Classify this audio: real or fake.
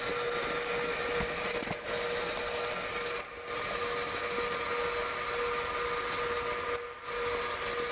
real